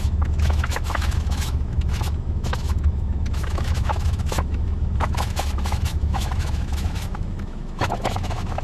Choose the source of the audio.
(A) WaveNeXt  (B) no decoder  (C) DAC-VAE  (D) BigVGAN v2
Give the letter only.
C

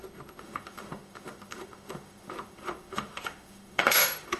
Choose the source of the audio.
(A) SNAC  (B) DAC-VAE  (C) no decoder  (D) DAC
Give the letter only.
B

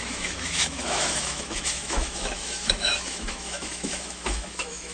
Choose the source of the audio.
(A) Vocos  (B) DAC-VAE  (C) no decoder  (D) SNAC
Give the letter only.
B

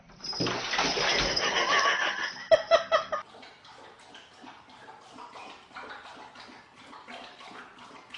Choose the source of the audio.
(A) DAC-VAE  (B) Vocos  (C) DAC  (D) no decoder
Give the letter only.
D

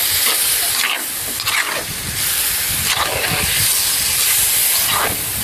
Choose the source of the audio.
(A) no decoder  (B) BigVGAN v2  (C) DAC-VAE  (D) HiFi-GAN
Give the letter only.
A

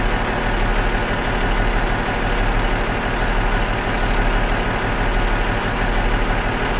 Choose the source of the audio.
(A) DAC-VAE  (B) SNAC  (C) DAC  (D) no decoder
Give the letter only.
D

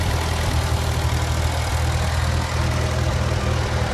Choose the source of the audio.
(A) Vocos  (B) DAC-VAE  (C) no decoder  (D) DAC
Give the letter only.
C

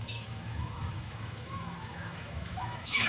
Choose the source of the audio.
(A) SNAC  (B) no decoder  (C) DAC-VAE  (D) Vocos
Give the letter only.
C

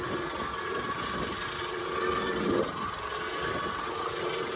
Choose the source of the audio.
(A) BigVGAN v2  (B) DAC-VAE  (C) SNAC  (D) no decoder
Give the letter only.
D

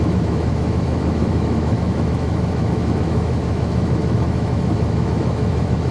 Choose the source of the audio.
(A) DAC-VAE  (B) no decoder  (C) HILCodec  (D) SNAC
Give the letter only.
A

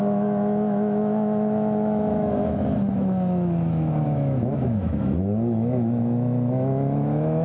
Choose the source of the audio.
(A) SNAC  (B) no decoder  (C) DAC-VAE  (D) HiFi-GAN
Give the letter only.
C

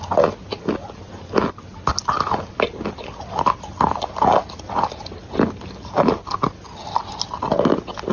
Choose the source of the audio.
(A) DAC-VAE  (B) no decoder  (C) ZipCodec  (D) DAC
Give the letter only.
B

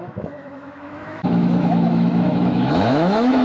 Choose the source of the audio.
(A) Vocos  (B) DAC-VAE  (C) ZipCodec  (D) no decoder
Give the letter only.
B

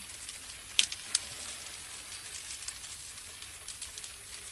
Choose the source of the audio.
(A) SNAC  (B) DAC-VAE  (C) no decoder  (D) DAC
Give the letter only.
C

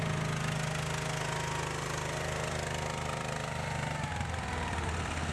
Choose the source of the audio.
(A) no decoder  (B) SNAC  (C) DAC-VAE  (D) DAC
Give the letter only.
A